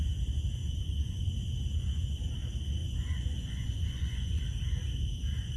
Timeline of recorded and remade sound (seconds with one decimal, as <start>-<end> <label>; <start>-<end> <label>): 0.0-0.6 recorded; 0.6-1.2 remade; 1.2-1.7 recorded; 1.7-2.3 remade; 2.3-2.8 recorded; 2.8-4.4 remade; 4.4-5.6 recorded